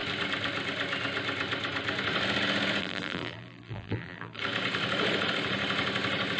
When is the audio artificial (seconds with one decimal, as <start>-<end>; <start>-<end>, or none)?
2.8-4.4